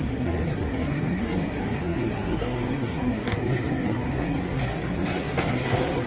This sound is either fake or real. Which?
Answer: fake